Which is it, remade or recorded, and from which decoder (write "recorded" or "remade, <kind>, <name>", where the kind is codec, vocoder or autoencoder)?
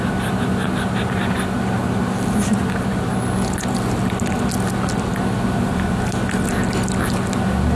recorded